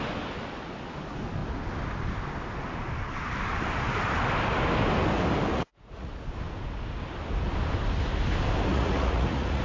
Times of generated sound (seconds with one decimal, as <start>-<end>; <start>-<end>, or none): 5.5-6.1; 8.7-9.6